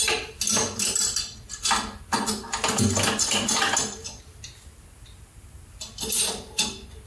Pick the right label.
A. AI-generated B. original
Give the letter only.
B